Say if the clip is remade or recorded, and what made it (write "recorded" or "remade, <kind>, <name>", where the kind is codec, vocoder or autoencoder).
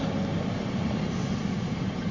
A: recorded